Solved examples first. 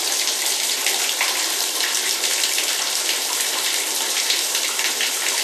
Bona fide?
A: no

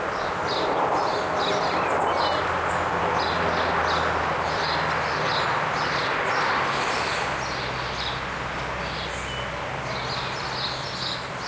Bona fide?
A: yes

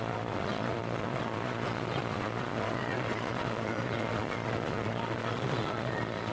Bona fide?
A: no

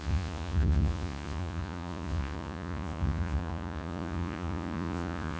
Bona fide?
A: no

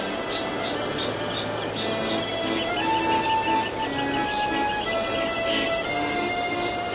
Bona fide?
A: yes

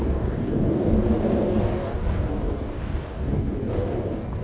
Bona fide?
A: no